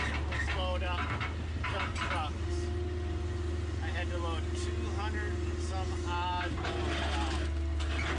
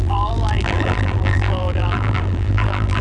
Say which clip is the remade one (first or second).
second